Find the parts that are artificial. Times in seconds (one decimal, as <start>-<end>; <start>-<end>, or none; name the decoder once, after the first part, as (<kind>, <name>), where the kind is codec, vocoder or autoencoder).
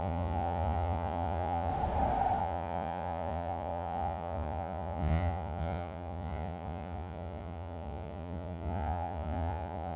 0.0-1.7 (vocoder, Vocos); 2.4-10.0